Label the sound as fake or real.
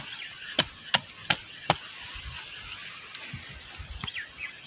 real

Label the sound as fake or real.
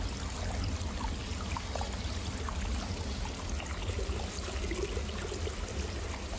real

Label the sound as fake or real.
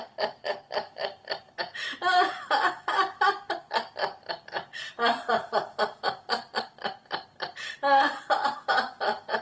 real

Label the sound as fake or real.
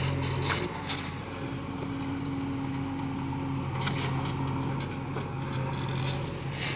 real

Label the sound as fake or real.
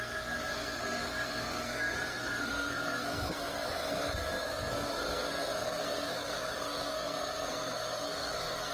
fake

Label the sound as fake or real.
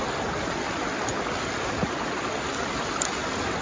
real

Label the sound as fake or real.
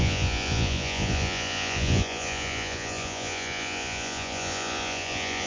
fake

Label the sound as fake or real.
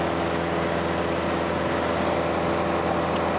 real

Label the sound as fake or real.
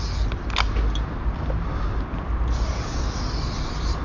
real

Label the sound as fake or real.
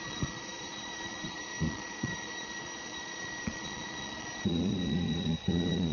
fake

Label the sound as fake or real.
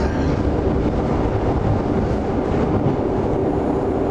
real